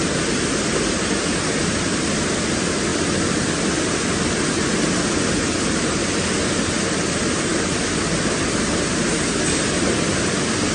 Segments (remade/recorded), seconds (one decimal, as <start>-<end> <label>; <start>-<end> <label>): 0.0-10.7 recorded